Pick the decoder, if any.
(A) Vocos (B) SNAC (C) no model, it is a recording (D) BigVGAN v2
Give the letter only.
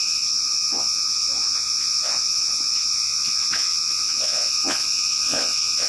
A